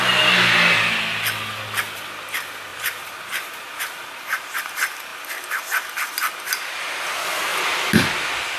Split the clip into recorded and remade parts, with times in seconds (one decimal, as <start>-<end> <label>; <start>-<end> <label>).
0.0-2.7 recorded; 2.7-4.6 remade; 4.6-8.6 recorded